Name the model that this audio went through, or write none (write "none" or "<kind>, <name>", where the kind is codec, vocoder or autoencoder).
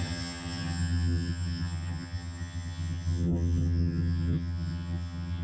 vocoder, HiFi-GAN